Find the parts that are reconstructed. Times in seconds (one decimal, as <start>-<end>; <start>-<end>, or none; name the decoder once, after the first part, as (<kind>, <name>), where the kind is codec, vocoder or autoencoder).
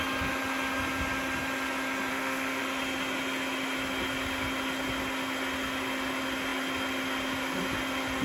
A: 2.1-2.6 (autoencoder, DAC-VAE)